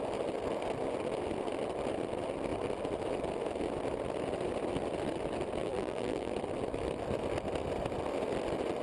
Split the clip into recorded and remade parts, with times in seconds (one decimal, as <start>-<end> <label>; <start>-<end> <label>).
0.0-5.6 recorded; 5.6-6.3 remade; 6.3-8.8 recorded